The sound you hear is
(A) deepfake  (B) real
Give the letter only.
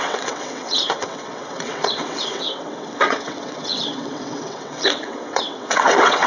A